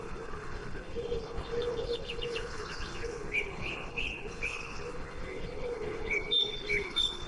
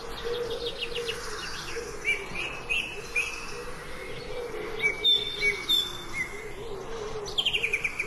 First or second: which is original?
second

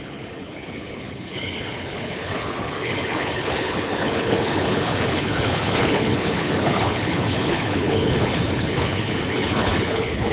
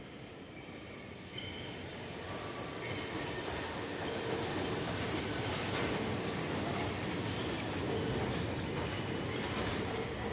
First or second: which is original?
second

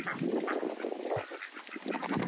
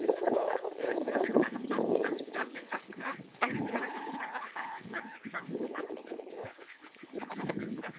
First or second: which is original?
first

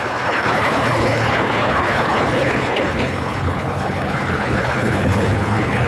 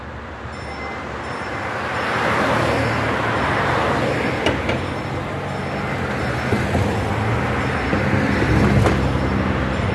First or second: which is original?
second